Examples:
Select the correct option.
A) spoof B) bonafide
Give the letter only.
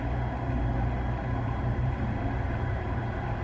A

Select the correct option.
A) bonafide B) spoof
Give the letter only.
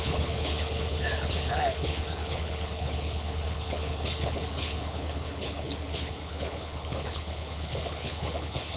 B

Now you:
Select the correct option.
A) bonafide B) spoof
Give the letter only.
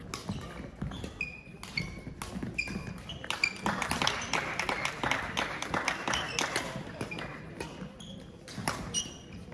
A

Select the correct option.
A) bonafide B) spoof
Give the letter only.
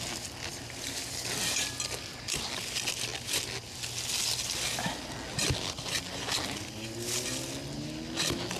A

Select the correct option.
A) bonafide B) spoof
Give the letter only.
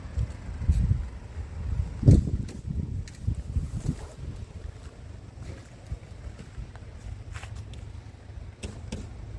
A